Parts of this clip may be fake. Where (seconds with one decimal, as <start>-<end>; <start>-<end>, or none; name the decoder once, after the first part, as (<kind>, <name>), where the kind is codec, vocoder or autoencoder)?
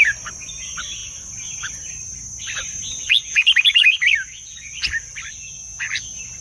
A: none